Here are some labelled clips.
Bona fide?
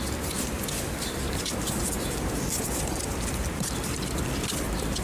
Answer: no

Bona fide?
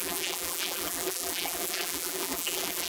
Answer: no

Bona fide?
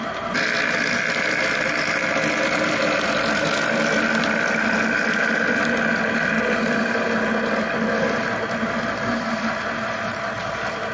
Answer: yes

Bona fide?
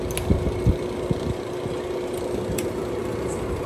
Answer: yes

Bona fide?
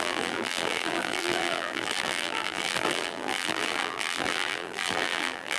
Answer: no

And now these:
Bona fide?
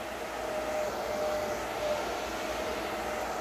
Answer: yes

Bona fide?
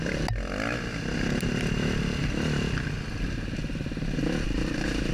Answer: yes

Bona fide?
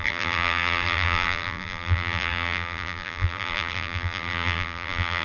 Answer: no